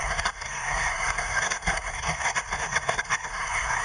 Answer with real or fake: fake